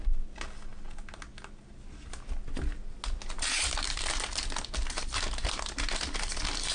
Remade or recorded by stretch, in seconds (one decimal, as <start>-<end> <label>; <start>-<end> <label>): 0.0-5.4 recorded; 5.4-6.7 remade